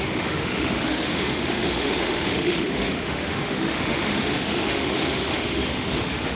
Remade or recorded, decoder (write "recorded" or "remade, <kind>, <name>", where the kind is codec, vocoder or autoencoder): remade, autoencoder, DAC-VAE